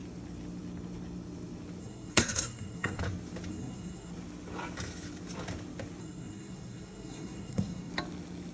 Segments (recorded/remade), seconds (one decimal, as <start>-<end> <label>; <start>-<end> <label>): 0.0-1.8 recorded; 1.8-3.0 remade; 3.0-3.5 recorded; 3.5-4.1 remade; 4.1-6.0 recorded; 6.0-7.9 remade; 7.9-8.5 recorded

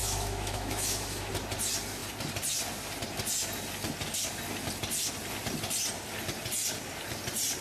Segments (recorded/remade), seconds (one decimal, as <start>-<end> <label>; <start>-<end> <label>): 0.0-1.3 remade; 1.3-7.6 recorded

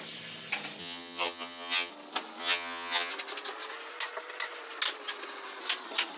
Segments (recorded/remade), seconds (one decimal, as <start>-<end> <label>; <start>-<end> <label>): 0.0-0.8 recorded; 0.8-1.9 remade; 1.9-2.4 recorded; 2.4-3.1 remade; 3.1-6.2 recorded